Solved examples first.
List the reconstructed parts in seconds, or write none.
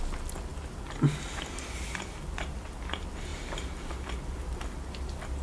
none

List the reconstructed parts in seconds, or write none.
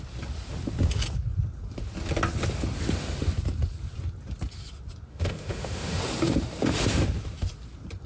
5.1-6.0 (autoencoder, DAC-VAE)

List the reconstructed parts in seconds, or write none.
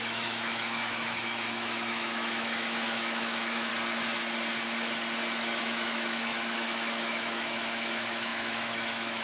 0.0-3.7 (autoencoder, DAC-VAE); 5.6-9.2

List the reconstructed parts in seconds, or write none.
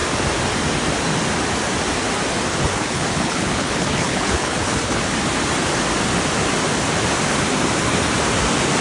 2.5-5.0 (codec, HILCodec)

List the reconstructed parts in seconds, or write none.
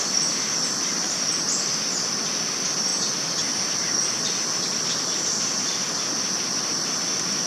none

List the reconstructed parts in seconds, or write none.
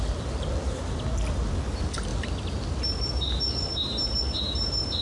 none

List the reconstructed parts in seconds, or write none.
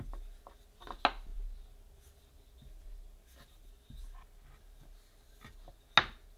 none